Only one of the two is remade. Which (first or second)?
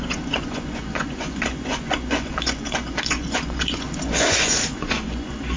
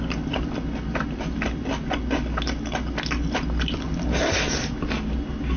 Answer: first